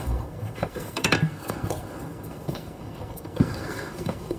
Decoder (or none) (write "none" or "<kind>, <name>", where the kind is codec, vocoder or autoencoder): codec, SNAC